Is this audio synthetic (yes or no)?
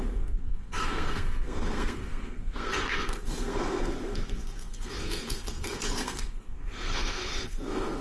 yes